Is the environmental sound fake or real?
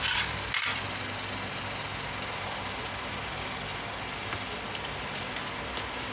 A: real